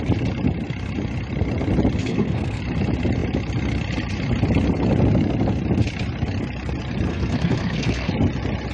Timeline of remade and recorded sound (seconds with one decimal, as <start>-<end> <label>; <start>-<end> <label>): 0.0-2.0 recorded; 2.0-2.6 remade; 2.6-7.1 recorded; 7.1-8.1 remade; 8.1-8.7 recorded